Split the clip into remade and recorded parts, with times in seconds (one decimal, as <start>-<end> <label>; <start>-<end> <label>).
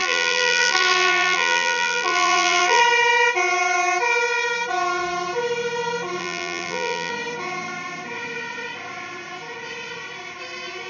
0.0-2.8 remade; 2.8-6.2 recorded; 6.2-7.1 remade; 7.1-10.9 recorded